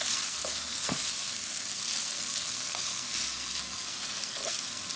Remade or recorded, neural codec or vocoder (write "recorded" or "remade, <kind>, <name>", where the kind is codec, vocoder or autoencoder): remade, codec, SNAC